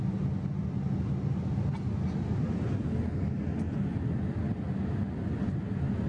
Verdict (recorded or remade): recorded